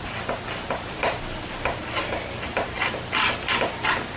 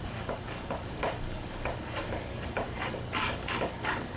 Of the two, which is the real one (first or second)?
first